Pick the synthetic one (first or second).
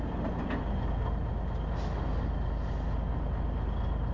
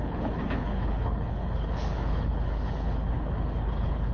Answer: second